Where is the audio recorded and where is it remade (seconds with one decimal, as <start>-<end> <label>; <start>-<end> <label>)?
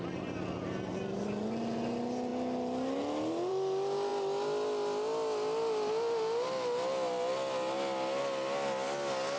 0.0-9.4 recorded